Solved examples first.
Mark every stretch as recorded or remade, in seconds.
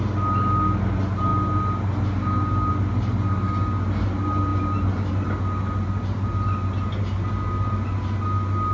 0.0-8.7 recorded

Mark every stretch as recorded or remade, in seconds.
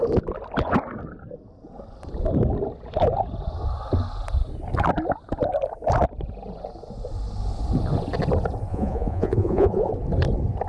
0.0-8.7 recorded; 8.7-9.9 remade; 9.9-10.7 recorded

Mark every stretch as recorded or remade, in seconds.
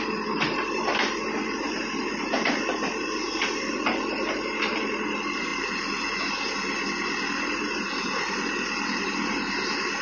0.0-10.0 recorded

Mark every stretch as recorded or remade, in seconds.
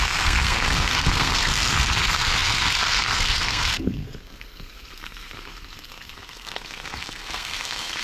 0.0-8.0 remade